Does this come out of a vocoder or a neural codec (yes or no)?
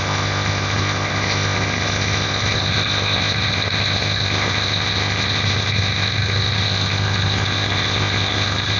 yes